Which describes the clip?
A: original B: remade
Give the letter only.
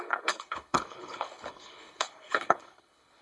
B